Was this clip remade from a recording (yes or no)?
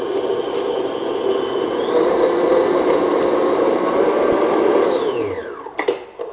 no